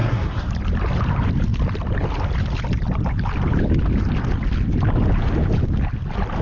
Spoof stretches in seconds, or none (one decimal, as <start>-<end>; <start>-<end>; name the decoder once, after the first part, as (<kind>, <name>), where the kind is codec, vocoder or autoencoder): 0.0-0.5 (codec, SNAC)